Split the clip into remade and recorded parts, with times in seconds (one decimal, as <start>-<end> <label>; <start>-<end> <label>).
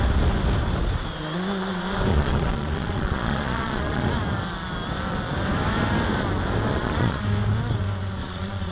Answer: 0.0-2.1 recorded; 2.1-4.1 remade; 4.1-6.7 recorded; 6.7-7.2 remade; 7.2-8.2 recorded; 8.2-8.7 remade